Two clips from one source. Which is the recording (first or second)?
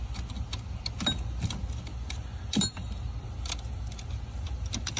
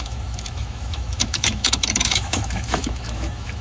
first